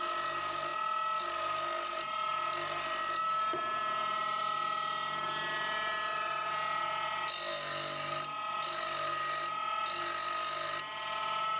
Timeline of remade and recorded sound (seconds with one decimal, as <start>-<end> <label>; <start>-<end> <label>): 0.0-11.6 recorded